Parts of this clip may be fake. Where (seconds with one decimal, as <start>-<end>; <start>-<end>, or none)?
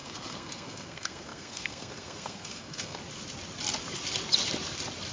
0.0-3.0